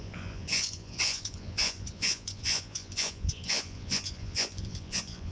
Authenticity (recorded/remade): remade